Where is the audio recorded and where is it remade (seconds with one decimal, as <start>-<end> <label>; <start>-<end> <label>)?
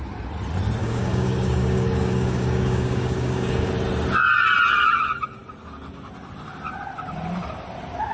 0.0-0.8 recorded; 0.8-3.7 remade; 3.7-8.1 recorded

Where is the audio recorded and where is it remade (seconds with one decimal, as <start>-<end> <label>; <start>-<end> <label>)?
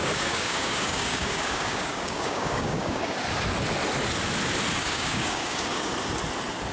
0.0-3.2 remade; 3.2-4.8 recorded; 4.8-5.9 remade; 5.9-6.7 recorded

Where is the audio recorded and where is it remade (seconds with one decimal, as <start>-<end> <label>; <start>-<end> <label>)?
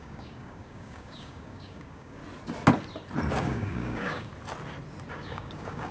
0.0-2.2 remade; 2.2-3.3 recorded; 3.3-4.3 remade; 4.3-5.1 recorded; 5.1-5.9 remade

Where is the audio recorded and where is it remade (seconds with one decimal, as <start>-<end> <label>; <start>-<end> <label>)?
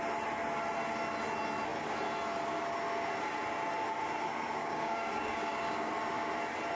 0.0-4.6 recorded; 4.6-5.9 remade; 5.9-6.7 recorded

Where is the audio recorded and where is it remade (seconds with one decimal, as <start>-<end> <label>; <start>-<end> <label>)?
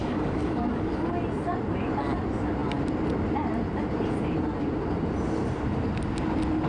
0.0-1.1 remade; 1.1-6.7 recorded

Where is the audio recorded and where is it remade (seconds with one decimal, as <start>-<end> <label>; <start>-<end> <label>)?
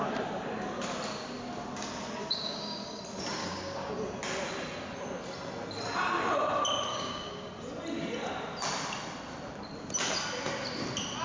0.0-2.2 recorded; 2.2-3.0 remade; 3.0-3.4 recorded; 3.4-3.9 remade; 3.9-6.9 recorded; 6.9-7.5 remade; 7.5-11.2 recorded